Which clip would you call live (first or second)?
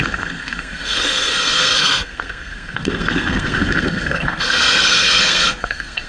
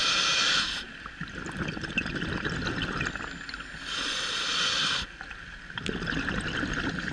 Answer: second